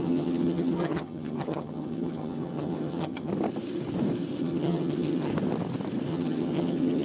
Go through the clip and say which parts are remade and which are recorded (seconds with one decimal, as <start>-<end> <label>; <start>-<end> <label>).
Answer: 0.0-3.3 remade; 3.3-4.4 recorded; 4.4-5.3 remade; 5.3-6.1 recorded; 6.1-7.0 remade